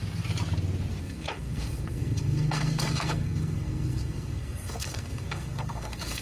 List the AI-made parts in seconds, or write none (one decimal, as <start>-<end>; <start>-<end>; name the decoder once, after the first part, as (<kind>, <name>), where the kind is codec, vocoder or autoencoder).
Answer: 1.0-6.2 (codec, SNAC)